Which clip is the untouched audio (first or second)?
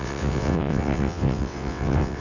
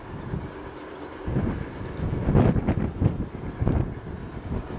second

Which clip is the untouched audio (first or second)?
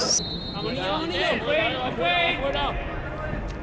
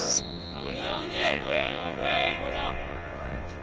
first